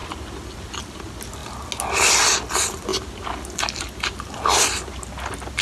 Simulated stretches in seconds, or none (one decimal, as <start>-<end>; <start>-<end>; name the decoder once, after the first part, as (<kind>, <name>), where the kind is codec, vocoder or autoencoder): none